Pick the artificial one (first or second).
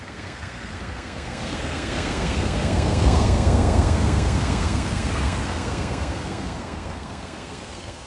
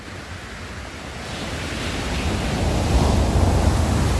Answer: first